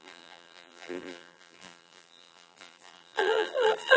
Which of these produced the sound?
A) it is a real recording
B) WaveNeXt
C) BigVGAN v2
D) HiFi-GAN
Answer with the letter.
C